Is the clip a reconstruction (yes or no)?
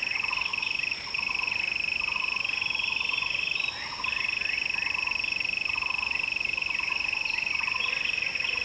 no